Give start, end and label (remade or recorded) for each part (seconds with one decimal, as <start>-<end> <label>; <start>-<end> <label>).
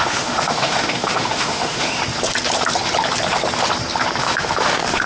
0.0-2.0 remade; 2.0-4.2 recorded; 4.2-5.1 remade